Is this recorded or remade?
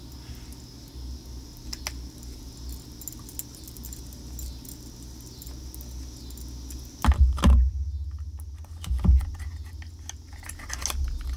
recorded